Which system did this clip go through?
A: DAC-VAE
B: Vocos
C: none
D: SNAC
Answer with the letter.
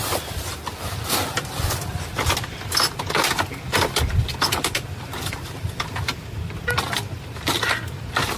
C